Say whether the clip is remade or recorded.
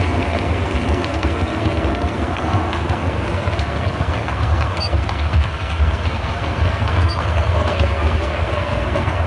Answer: remade